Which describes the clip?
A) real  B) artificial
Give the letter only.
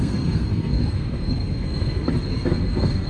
B